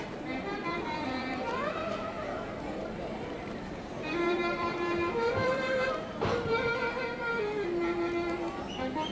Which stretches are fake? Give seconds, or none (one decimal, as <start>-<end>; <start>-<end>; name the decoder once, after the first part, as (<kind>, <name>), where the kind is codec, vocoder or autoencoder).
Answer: 0.6-1.5 (vocoder, BigVGAN v2); 2.8-6.7